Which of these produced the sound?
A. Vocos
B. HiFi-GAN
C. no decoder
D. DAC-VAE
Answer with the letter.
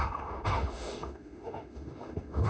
D